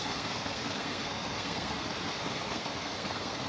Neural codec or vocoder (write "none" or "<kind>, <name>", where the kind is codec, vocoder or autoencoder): codec, SNAC